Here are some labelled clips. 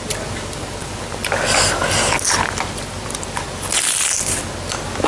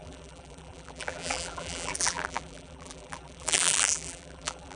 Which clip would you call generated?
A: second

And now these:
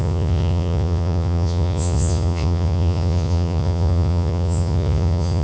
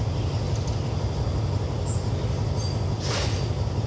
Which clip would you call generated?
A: first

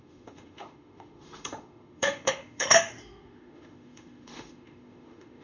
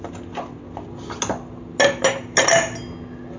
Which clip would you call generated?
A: first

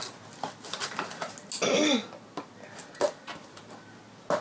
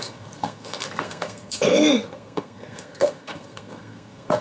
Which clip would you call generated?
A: second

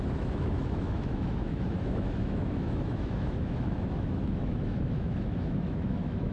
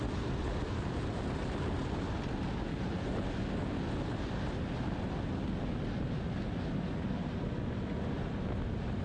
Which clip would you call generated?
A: first